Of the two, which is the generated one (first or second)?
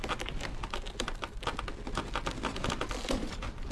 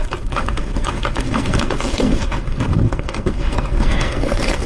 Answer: second